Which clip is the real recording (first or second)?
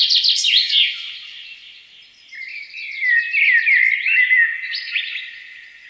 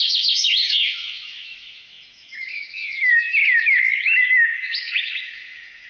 first